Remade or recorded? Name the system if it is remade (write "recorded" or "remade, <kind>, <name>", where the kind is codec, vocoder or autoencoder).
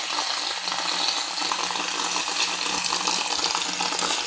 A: recorded